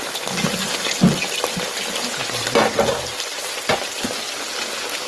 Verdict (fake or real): real